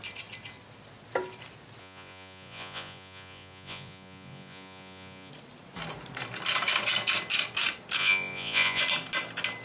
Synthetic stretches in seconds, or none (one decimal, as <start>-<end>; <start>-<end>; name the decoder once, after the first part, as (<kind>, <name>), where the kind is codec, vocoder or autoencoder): 1.8-5.3 (vocoder, Vocos); 8.0-8.8